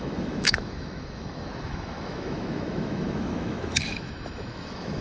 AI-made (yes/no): yes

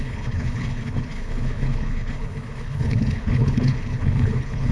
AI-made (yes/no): yes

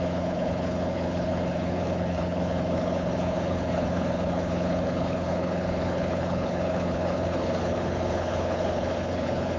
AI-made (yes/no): yes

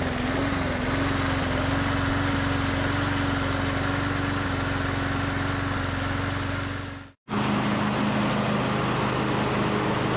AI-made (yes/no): no